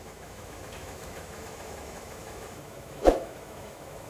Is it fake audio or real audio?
fake